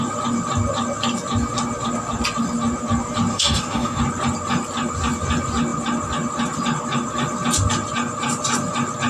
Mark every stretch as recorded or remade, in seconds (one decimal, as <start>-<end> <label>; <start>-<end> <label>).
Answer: 0.0-3.3 recorded; 3.3-4.0 remade; 4.0-9.1 recorded